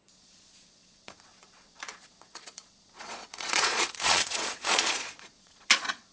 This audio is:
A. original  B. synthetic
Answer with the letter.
B